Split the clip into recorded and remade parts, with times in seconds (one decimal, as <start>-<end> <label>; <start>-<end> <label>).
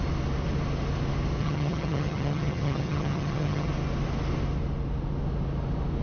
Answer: 0.0-1.4 recorded; 1.4-3.7 remade; 3.7-6.0 recorded